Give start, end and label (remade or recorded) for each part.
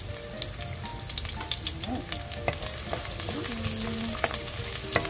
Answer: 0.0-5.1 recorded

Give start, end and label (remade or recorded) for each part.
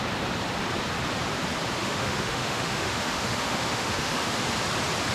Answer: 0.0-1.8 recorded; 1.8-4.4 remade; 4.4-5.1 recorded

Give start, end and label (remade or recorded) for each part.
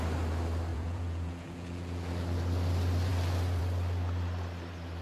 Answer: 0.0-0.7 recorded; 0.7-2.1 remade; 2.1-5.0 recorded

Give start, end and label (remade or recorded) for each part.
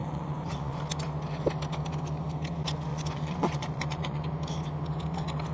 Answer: 0.0-0.8 remade; 0.8-2.9 recorded; 2.9-4.2 remade; 4.2-5.5 recorded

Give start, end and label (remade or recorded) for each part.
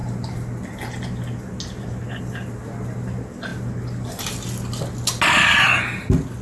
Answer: 0.0-6.4 recorded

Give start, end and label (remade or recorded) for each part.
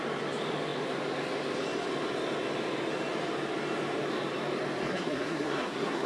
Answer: 0.0-4.9 recorded; 4.9-6.1 remade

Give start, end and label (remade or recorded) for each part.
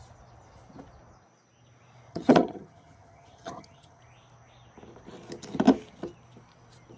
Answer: 0.0-2.1 recorded; 2.1-4.0 remade; 4.0-7.0 recorded